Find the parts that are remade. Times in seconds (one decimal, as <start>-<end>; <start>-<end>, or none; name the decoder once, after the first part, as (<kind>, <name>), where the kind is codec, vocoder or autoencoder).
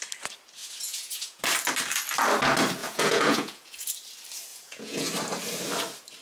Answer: 0.6-1.4 (vocoder, Vocos); 2.8-3.9; 4.5-5.1